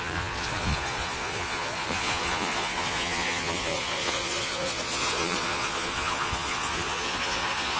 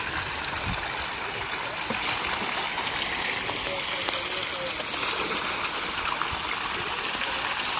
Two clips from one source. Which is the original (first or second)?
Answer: second